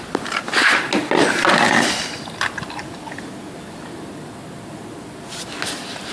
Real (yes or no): yes